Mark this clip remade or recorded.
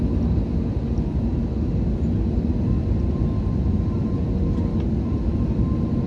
recorded